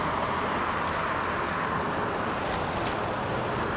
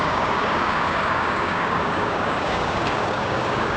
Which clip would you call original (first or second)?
first